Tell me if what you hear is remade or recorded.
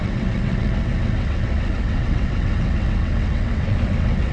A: remade